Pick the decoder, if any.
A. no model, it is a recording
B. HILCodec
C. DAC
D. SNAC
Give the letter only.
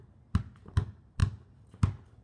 A